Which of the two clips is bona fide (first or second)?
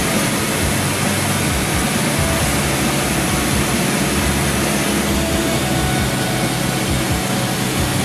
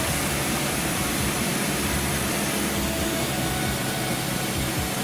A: first